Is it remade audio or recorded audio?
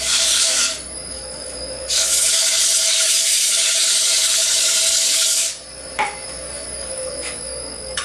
remade